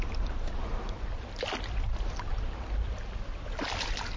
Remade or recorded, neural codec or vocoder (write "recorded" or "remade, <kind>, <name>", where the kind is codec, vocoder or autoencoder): recorded